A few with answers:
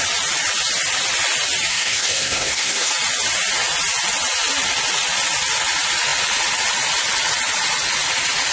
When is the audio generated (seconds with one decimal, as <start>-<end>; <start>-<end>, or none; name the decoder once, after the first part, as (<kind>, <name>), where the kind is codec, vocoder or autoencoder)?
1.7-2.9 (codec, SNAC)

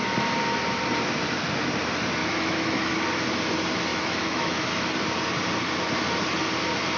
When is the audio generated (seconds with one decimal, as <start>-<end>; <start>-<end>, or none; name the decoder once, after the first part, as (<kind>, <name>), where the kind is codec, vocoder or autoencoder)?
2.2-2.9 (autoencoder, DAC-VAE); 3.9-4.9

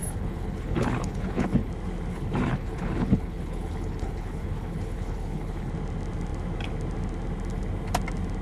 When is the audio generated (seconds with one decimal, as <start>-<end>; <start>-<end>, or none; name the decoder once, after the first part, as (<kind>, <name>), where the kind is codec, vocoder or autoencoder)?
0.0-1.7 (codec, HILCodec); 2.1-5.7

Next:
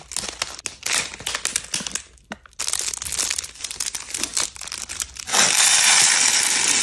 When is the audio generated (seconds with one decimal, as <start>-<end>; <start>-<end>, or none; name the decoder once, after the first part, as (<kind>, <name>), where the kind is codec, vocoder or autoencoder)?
none

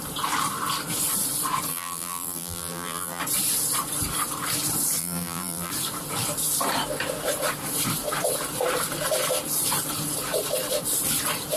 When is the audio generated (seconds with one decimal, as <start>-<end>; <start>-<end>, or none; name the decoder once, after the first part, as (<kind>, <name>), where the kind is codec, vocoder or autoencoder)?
1.7-3.2 (vocoder, BigVGAN v2); 5.0-5.7